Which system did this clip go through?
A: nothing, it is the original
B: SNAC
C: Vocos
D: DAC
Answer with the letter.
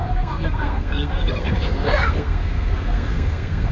B